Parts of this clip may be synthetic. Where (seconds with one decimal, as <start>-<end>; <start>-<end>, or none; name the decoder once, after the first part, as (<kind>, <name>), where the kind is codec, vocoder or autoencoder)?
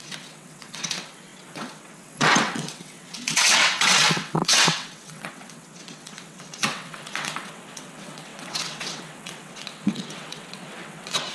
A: 0.0-11.3 (vocoder, WaveNeXt)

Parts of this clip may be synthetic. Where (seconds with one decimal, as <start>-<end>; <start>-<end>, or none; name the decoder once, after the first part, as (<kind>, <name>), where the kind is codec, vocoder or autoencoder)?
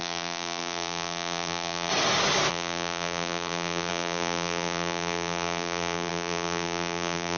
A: 0.0-1.9 (vocoder, BigVGAN v2); 2.5-7.4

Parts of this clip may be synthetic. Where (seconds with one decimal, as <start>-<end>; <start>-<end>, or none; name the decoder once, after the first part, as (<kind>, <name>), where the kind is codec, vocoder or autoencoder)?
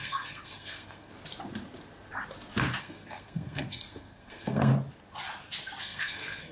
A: 0.0-1.1 (codec, SNAC); 2.8-4.7; 5.8-6.5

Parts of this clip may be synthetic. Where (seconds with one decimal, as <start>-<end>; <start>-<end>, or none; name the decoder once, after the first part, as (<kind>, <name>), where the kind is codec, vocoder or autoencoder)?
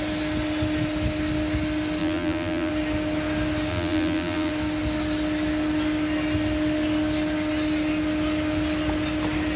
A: 2.0-2.7 (vocoder, BigVGAN v2); 3.7-4.5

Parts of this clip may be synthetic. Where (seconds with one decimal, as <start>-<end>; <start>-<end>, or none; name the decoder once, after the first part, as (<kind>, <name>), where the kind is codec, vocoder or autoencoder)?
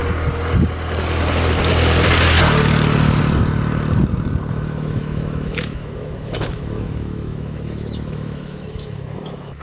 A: 4.5-9.6 (autoencoder, DAC-VAE)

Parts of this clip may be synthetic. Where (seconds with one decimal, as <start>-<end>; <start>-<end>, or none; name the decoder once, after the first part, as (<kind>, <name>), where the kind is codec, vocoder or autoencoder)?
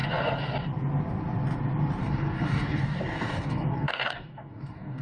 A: 2.0-5.0 (codec, DAC)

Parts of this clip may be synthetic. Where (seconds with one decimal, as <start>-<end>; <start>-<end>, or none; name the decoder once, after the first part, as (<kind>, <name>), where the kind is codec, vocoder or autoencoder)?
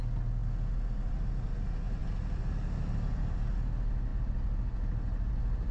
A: none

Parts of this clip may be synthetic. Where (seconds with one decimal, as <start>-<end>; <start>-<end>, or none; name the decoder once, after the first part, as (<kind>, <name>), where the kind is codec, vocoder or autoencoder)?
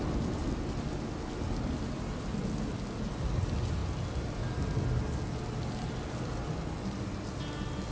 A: none